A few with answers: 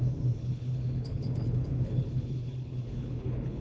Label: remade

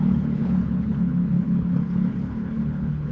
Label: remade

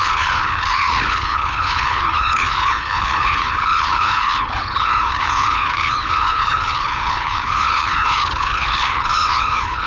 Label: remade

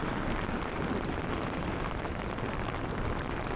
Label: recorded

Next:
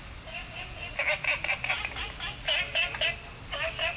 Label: recorded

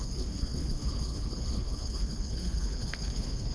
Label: remade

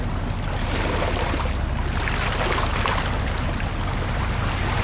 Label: recorded